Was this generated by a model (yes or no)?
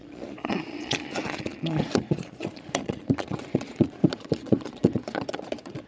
yes